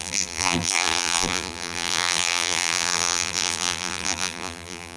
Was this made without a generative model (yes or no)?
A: no